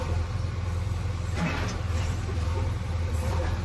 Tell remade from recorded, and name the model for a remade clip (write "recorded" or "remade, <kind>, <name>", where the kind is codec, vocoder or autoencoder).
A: remade, vocoder, BigVGAN v2